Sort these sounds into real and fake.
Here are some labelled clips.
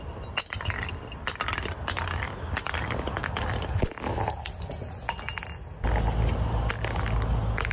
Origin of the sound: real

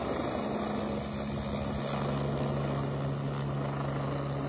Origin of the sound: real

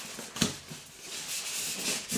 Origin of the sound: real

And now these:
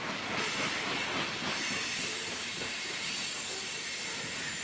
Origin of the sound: real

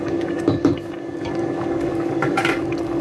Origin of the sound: fake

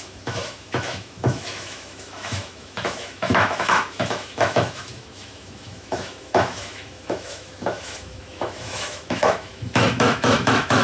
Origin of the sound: fake